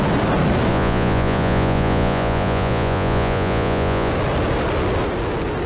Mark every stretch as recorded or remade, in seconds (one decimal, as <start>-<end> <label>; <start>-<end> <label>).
0.0-0.7 recorded; 0.7-4.1 remade; 4.1-5.7 recorded